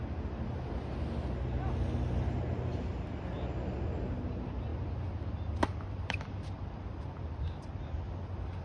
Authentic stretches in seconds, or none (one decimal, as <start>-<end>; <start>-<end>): 0.0-8.6